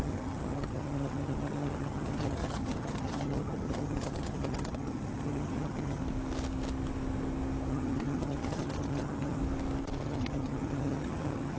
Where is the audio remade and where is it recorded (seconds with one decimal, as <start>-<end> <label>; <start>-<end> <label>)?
0.0-6.0 remade; 6.0-7.7 recorded; 7.7-9.4 remade; 9.4-10.0 recorded; 10.0-11.6 remade